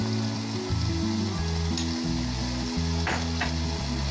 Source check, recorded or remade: recorded